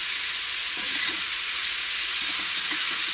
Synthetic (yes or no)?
yes